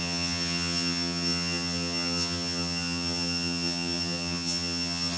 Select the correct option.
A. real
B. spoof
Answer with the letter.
B